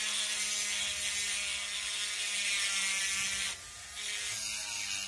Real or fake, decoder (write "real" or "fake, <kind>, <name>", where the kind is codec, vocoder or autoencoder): real